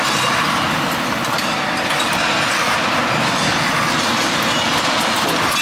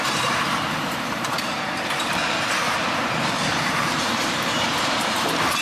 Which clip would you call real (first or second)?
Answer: first